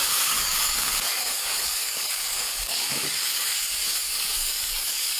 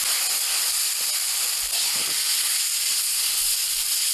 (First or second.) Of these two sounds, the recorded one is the second